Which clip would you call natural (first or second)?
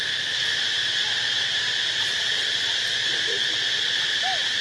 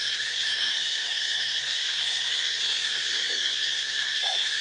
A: first